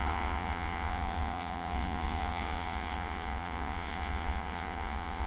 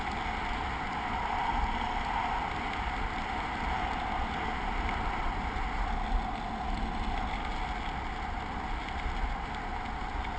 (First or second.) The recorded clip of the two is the second